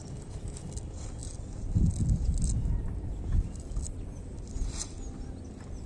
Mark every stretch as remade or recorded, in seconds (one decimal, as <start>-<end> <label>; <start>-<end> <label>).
0.0-5.9 recorded